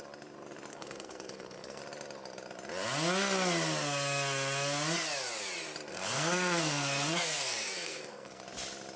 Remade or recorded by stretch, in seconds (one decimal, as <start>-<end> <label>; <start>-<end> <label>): 0.0-0.7 recorded; 0.7-1.8 remade; 1.8-5.9 recorded; 5.9-8.4 remade; 8.4-9.0 recorded